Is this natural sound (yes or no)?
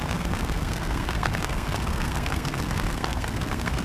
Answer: no